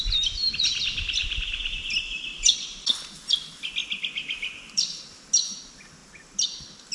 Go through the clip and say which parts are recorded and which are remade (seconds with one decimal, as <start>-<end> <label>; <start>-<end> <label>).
0.0-1.2 recorded; 1.2-2.2 remade; 2.2-3.8 recorded; 3.8-5.0 remade; 5.0-6.9 recorded